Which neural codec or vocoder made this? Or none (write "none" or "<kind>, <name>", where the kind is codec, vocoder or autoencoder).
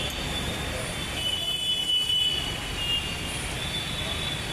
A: none